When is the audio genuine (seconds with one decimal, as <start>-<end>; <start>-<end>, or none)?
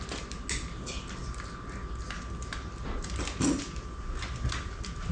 0.0-5.1